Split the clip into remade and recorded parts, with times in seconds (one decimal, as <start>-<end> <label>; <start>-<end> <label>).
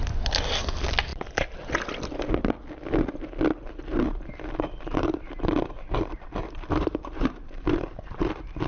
0.0-3.9 recorded; 3.9-8.7 remade